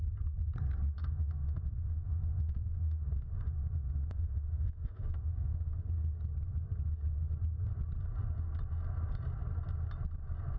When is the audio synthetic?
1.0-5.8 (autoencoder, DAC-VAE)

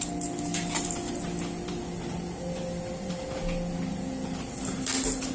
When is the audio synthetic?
none

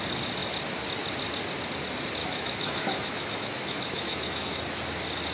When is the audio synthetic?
2.2-4.6 (autoencoder, DAC-VAE)

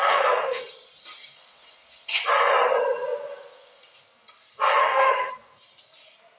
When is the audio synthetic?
0.0-0.6 (autoencoder, DAC-VAE); 4.8-5.3

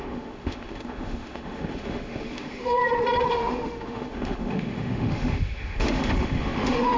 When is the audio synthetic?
0.0-2.8 (autoencoder, DAC-VAE); 3.3-7.0

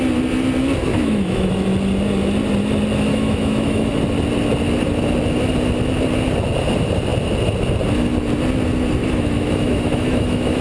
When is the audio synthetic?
0.9-1.5 (autoencoder, DAC-VAE); 3.1-4.0; 9.0-10.6

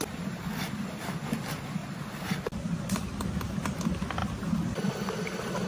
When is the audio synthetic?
none